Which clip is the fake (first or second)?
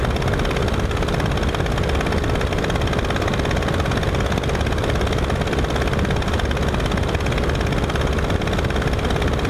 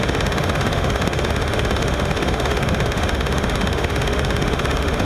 second